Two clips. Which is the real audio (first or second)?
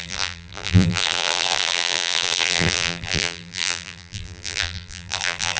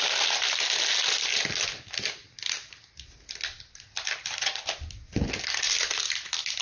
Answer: second